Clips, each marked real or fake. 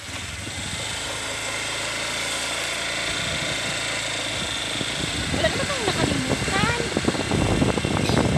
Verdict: real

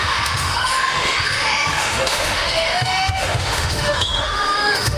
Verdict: fake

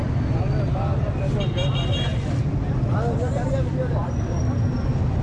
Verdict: real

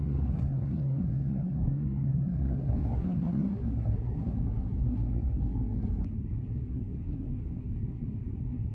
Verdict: fake